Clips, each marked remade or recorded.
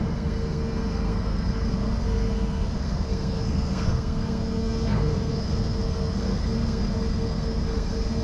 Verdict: remade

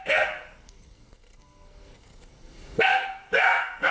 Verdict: remade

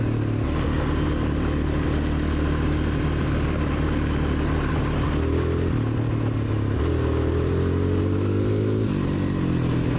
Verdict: recorded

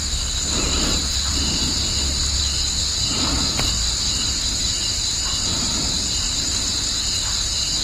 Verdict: recorded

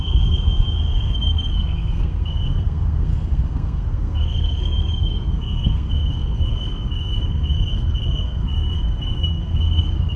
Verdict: remade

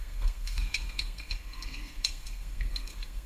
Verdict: remade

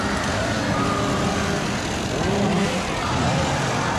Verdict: recorded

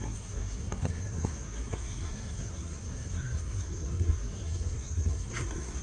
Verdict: remade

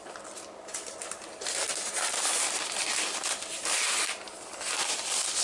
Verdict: recorded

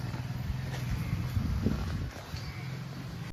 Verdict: recorded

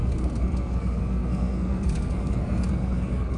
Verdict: remade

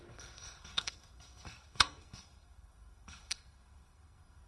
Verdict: remade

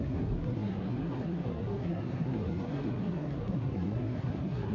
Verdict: remade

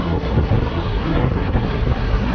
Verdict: remade